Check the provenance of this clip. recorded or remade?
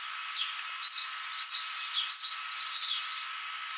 recorded